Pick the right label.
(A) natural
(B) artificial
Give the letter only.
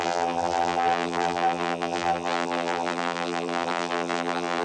B